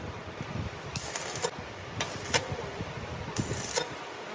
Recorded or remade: recorded